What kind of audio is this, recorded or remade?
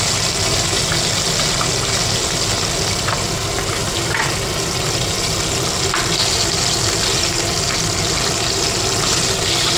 recorded